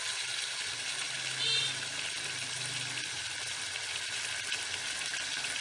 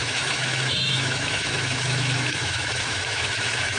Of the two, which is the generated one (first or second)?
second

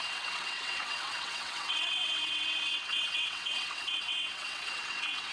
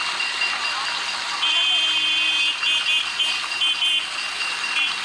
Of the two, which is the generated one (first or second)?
first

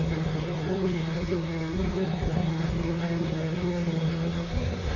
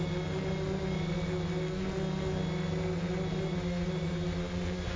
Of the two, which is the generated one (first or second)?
first